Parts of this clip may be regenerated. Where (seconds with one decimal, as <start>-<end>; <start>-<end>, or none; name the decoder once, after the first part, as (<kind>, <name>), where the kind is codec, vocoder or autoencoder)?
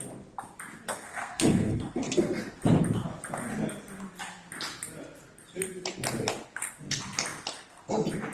0.9-2.4 (codec, SNAC)